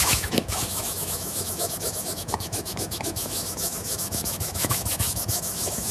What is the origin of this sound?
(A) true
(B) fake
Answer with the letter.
B